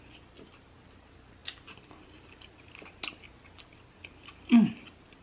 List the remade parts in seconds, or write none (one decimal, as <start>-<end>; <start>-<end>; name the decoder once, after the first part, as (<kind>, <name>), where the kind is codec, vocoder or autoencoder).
none